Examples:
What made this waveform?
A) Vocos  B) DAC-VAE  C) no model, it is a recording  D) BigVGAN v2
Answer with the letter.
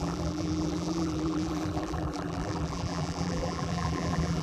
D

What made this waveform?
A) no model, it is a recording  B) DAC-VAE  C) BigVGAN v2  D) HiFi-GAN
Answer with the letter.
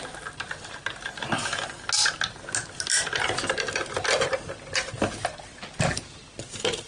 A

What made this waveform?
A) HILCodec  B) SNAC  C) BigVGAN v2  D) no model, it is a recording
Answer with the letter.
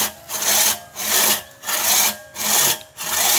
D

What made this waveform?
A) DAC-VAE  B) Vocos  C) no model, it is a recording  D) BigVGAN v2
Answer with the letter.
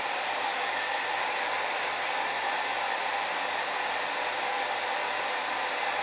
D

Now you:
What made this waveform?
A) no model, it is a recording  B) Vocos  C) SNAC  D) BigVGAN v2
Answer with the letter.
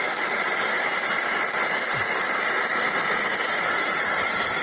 A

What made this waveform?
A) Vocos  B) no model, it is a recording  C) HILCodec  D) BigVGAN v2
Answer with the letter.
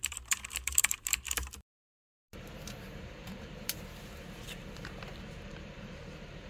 D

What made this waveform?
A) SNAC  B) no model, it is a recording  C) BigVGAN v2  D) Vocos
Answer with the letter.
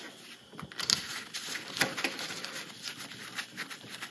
B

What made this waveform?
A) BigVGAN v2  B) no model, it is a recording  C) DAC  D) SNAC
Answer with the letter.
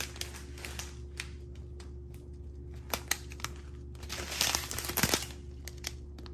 B